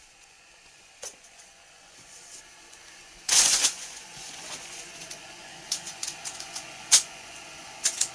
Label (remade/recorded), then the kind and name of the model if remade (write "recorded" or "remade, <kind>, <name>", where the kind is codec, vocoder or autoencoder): remade, vocoder, Vocos